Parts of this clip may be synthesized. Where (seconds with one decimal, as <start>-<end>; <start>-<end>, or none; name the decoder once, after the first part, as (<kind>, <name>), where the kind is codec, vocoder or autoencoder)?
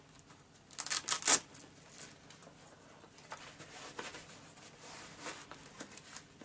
none